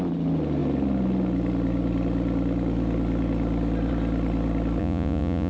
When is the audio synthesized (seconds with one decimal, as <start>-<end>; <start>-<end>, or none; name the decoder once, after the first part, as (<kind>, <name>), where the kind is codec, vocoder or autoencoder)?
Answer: 4.8-5.5 (vocoder, Vocos)